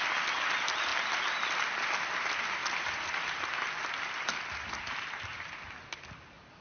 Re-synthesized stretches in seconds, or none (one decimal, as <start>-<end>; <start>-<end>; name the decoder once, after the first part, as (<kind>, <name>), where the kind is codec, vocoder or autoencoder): none